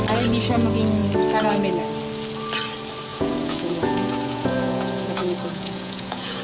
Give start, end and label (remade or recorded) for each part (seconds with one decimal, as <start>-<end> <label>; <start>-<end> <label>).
0.0-3.1 recorded; 3.1-6.4 remade